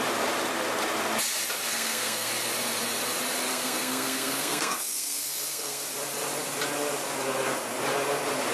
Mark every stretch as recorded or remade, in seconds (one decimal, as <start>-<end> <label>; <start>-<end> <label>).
0.0-1.7 recorded; 1.7-2.3 remade; 2.3-3.5 recorded; 3.5-5.8 remade; 5.8-8.5 recorded